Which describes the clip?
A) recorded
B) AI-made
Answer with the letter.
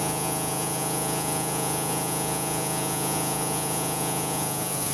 B